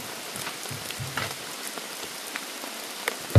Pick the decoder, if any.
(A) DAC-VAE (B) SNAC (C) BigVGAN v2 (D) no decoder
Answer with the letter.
D